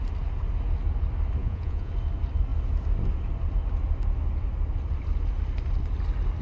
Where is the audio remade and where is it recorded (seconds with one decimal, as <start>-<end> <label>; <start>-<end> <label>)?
0.0-1.4 recorded; 1.4-1.9 remade; 1.9-6.4 recorded

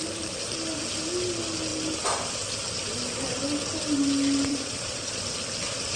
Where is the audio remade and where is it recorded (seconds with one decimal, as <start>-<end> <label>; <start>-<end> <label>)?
0.0-4.5 recorded; 4.5-5.1 remade; 5.1-6.0 recorded